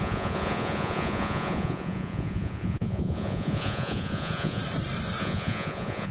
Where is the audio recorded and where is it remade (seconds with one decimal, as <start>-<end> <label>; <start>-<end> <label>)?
0.0-4.6 remade; 4.6-5.2 recorded; 5.2-6.1 remade